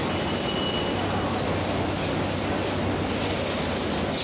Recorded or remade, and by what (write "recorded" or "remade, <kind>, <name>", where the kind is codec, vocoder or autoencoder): recorded